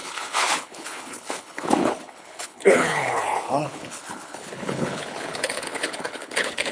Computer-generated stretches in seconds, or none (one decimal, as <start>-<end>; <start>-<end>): 0.0-6.7